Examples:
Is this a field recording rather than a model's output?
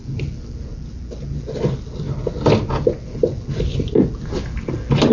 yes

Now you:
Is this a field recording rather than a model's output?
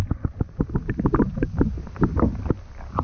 yes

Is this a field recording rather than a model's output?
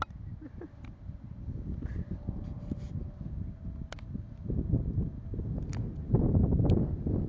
yes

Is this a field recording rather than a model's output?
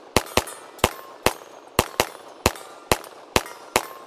yes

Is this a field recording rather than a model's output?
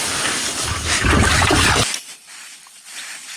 no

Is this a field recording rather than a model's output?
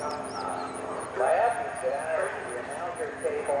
yes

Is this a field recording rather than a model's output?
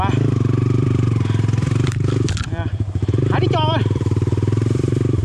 no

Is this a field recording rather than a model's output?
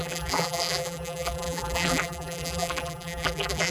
no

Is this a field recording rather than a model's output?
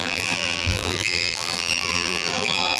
no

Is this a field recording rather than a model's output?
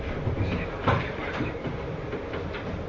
yes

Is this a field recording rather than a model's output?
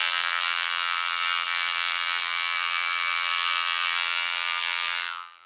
no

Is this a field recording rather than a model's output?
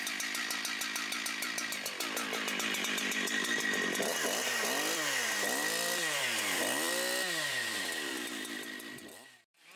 no